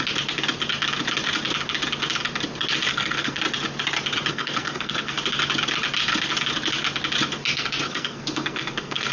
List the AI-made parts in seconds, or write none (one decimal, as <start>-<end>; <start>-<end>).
2.9-3.4; 4.3-5.2; 7.5-9.1